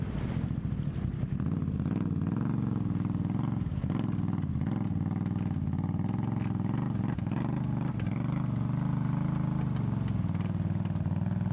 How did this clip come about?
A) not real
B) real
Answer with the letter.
B